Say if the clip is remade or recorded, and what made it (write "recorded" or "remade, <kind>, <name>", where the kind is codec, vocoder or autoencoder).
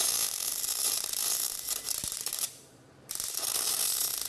remade, vocoder, BigVGAN v2